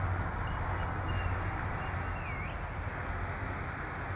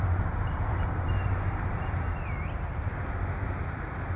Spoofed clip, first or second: second